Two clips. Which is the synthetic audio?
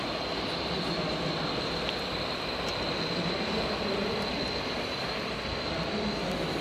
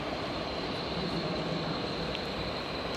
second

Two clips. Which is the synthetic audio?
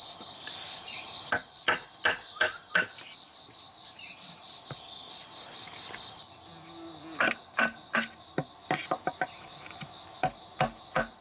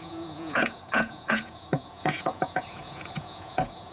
second